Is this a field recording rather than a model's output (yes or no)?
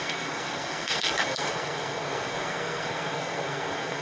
no